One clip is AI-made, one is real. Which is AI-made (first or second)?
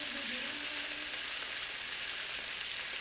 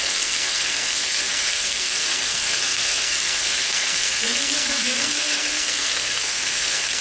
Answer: second